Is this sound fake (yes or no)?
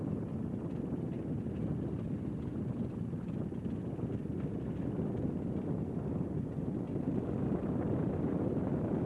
no